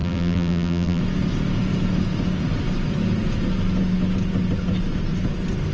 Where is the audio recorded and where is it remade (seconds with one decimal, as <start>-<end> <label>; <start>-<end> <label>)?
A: 0.0-1.0 remade; 1.0-5.7 recorded